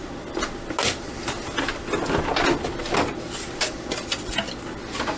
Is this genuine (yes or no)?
yes